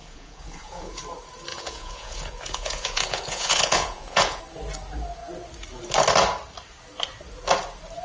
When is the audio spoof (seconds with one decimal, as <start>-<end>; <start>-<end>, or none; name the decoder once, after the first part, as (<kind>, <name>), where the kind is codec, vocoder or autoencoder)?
0.0-1.0 (vocoder, Vocos); 1.5-4.4